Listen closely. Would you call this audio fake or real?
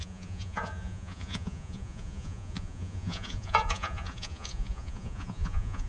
fake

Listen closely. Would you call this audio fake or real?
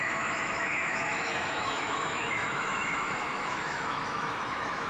fake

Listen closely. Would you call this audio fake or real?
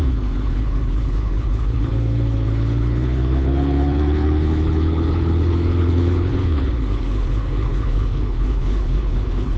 fake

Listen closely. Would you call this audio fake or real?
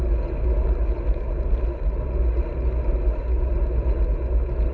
real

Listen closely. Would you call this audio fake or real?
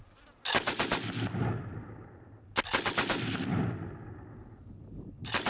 real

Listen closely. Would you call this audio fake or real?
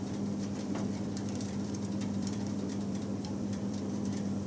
fake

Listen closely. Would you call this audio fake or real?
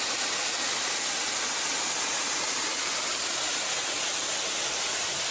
real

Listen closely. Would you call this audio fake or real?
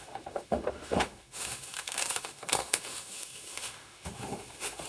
fake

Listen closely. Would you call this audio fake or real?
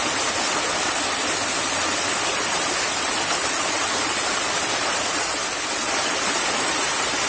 real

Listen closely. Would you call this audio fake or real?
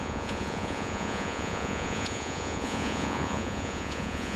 fake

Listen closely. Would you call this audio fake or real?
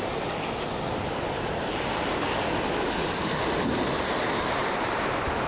real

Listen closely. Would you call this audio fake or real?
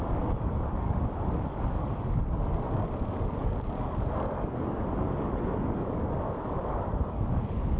fake